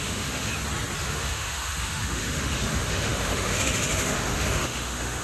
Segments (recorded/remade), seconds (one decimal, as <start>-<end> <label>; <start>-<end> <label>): 0.0-0.5 remade; 0.5-1.0 recorded; 1.0-5.2 remade